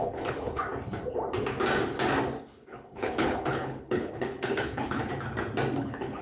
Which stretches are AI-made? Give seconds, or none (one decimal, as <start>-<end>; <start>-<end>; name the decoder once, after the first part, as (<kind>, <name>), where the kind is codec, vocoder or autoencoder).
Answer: 0.0-0.6 (codec, HILCodec); 2.4-5.1; 5.8-6.2